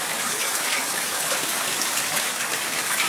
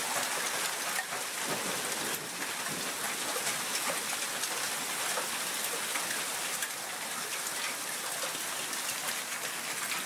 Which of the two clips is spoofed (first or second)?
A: first